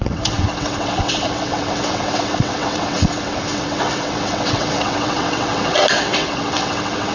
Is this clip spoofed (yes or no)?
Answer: yes